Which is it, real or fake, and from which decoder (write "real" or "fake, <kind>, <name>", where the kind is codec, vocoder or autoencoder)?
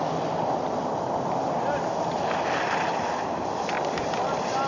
real